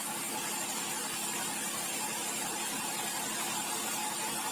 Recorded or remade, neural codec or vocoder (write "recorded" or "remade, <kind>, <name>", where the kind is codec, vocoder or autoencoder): recorded